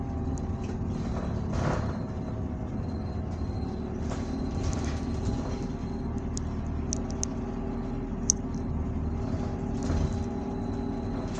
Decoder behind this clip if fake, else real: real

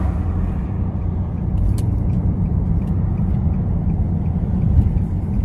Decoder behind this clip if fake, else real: fake, vocoder, BigVGAN v2